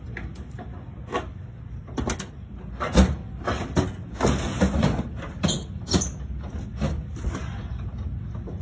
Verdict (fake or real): real